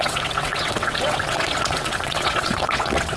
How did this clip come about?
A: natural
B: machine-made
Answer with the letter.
B